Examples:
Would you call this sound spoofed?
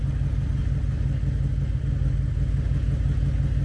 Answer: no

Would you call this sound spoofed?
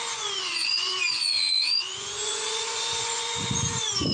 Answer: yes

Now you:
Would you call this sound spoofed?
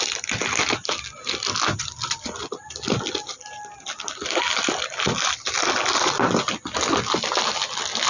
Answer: no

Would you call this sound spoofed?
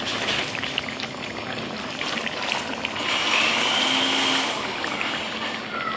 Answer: no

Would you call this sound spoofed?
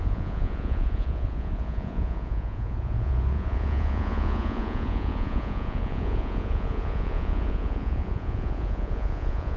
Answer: yes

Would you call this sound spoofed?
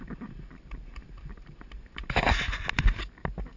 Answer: no